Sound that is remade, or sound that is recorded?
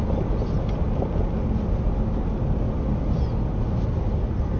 recorded